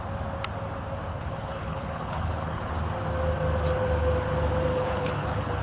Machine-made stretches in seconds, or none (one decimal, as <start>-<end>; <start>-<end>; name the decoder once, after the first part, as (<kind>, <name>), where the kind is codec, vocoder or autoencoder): 1.1-2.7 (codec, HILCodec); 4.7-5.6